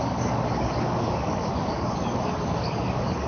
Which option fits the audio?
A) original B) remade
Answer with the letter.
B